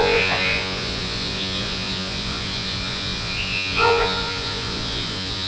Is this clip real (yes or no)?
no